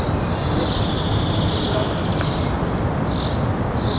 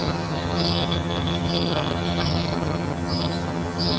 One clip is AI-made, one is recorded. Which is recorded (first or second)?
first